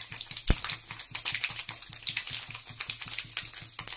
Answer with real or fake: real